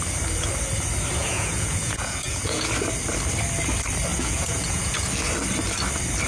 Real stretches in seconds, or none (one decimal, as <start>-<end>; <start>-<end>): 0.0-1.2; 2.7-4.1; 5.1-6.3